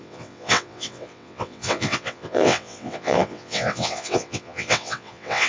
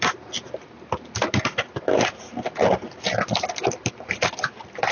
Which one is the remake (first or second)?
first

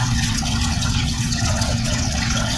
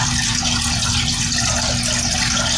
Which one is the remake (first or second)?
first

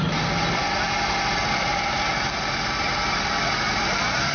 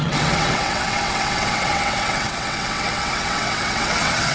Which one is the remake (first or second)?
second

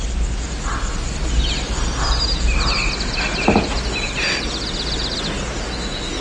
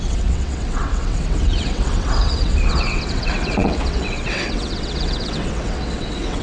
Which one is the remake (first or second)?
second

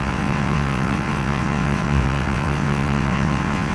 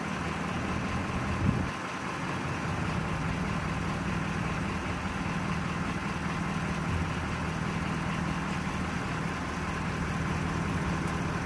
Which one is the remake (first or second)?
first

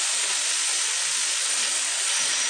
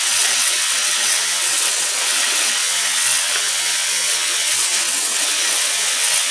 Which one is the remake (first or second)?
second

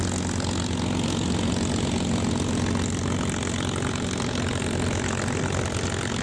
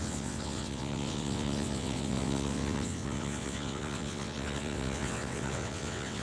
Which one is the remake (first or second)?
second